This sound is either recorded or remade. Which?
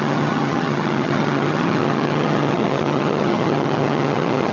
remade